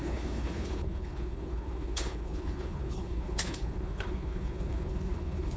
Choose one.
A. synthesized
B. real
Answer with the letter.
A